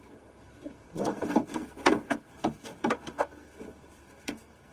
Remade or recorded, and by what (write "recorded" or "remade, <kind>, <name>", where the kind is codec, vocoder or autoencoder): remade, codec, SNAC